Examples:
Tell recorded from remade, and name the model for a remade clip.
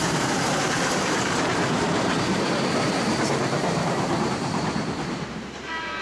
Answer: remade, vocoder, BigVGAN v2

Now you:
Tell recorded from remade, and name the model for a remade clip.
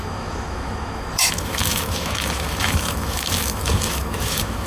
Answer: remade, autoencoder, DAC-VAE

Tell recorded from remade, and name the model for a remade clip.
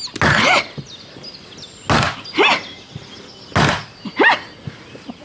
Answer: recorded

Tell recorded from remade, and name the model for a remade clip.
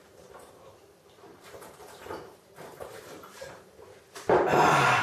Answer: remade, vocoder, BigVGAN v2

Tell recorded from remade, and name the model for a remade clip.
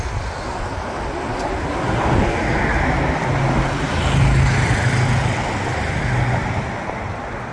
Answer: recorded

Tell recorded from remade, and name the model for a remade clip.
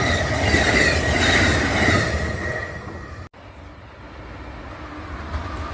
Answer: recorded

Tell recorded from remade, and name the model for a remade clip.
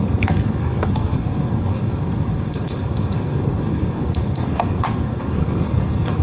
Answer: remade, codec, SNAC